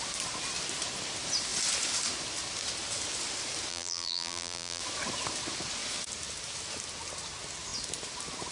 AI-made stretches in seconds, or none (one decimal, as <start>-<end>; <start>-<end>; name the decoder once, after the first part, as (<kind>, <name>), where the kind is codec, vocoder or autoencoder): 3.7-4.8 (vocoder, BigVGAN v2)